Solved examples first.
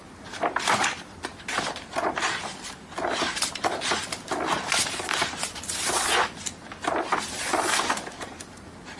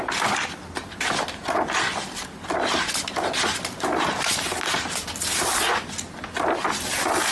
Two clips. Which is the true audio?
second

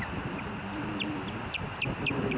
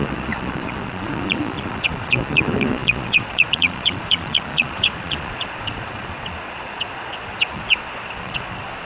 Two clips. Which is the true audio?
first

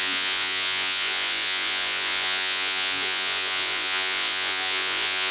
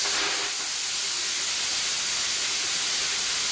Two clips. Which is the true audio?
second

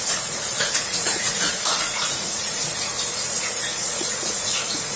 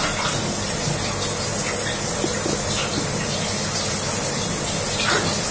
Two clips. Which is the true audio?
second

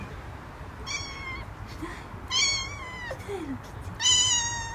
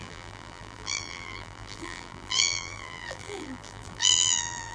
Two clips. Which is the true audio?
first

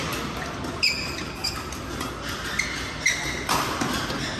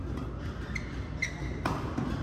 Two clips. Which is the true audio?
first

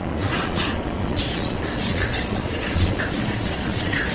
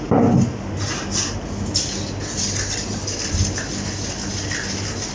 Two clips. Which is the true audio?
second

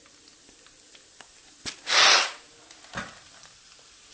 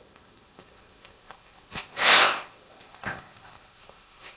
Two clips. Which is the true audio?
first